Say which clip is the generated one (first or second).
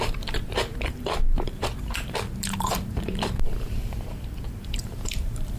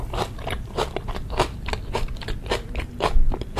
first